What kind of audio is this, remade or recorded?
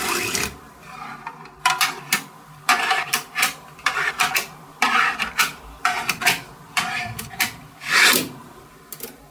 remade